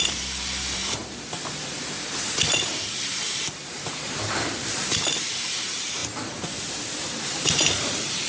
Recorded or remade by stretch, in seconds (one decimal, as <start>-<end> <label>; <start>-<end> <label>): 0.0-1.0 remade; 1.0-2.6 recorded; 2.6-8.3 remade